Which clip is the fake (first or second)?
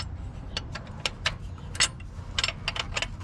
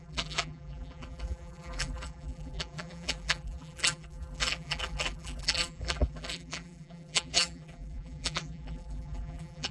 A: second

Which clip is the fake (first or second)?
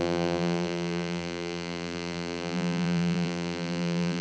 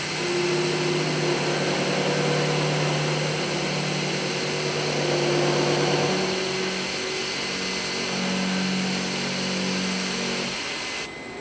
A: first